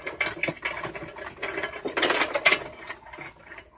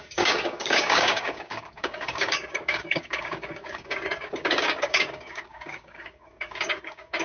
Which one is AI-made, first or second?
second